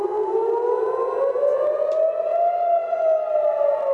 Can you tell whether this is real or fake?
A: real